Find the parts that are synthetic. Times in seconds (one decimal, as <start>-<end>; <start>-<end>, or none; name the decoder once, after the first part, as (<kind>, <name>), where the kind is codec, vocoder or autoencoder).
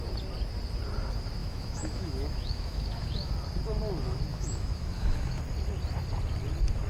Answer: 1.4-3.3 (autoencoder, DAC-VAE); 4.3-5.4